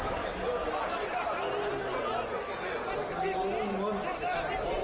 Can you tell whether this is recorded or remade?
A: recorded